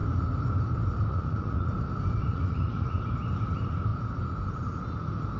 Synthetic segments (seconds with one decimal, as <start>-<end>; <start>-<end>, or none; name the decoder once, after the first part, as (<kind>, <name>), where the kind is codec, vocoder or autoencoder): 1.1-1.7 (vocoder, Vocos); 2.2-3.0